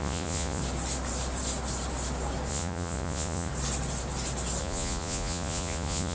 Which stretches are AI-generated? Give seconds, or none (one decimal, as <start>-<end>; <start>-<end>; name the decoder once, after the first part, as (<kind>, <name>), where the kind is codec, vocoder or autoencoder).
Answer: 0.0-0.6 (vocoder, Vocos); 2.5-3.5; 4.6-6.1